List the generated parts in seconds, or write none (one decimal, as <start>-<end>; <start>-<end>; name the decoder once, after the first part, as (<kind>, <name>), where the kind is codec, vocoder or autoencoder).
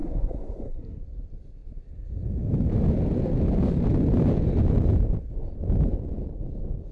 0.0-1.0 (codec, SNAC)